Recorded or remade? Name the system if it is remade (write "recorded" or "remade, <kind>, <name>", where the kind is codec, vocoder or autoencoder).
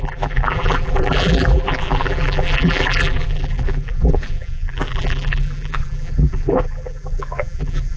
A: remade, vocoder, BigVGAN v2